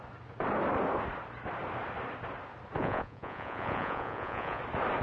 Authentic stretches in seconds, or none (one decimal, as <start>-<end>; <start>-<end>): 0.0-2.8; 4.6-5.0